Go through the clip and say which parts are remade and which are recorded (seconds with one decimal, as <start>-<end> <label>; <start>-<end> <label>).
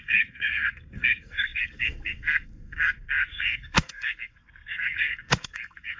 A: 0.0-6.0 remade